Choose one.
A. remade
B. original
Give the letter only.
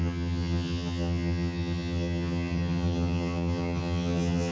A